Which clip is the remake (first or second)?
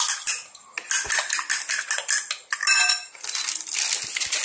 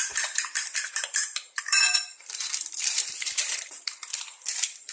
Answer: second